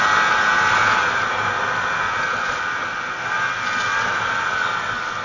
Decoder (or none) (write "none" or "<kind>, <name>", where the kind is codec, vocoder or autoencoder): none